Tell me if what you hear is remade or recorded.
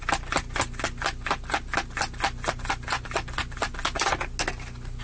recorded